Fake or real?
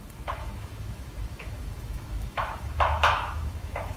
fake